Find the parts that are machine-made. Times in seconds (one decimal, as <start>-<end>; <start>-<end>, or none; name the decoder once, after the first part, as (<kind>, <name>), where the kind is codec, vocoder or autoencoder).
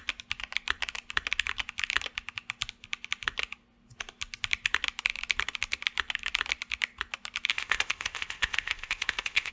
7.5-9.5 (codec, ZipCodec)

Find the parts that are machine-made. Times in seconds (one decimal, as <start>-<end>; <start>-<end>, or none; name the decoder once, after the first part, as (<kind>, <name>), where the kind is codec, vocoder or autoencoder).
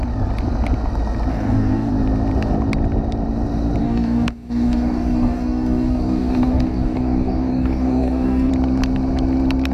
1.3-1.9 (codec, DAC); 3.8-8.5